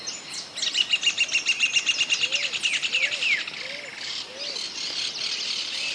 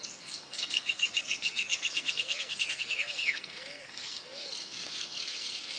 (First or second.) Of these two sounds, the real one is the first